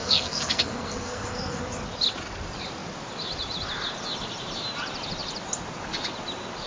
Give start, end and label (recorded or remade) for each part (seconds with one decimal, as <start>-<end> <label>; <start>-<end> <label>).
0.0-1.6 remade; 1.6-6.7 recorded